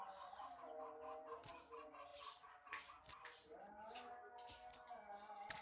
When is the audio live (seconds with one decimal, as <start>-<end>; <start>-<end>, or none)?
0.0-5.6